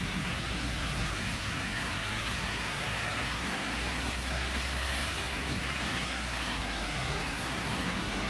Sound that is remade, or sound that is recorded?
remade